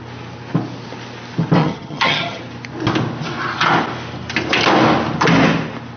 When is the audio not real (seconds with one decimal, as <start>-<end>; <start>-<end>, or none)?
1.6-2.4